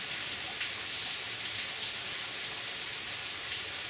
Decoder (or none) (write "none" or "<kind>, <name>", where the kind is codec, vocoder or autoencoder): none